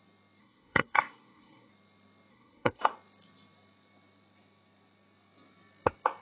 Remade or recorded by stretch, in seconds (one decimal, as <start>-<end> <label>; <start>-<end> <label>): 0.0-0.4 recorded; 0.4-1.7 remade; 1.7-2.3 recorded; 2.3-2.9 remade; 2.9-6.2 recorded